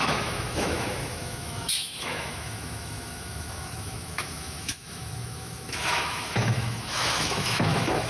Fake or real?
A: fake